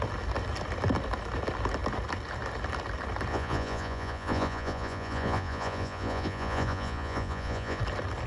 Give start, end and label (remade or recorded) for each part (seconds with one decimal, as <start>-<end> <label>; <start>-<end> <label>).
0.0-3.3 recorded; 3.3-7.8 remade; 7.8-8.3 recorded